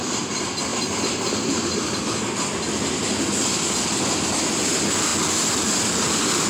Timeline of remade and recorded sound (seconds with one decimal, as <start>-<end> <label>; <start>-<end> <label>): 0.0-6.5 recorded